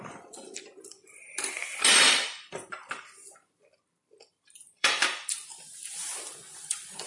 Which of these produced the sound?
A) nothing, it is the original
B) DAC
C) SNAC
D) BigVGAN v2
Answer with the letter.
D